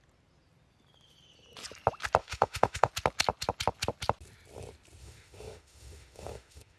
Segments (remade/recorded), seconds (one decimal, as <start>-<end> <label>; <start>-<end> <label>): 0.0-2.2 recorded; 2.2-2.9 remade; 2.9-5.0 recorded; 5.0-6.8 remade